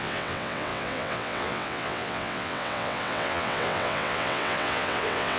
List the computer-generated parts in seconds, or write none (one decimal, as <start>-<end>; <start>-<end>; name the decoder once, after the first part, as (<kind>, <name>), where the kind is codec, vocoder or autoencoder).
0.0-5.4 (vocoder, WaveNeXt)